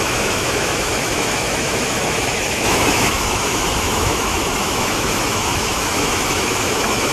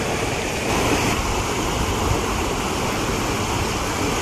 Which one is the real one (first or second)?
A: second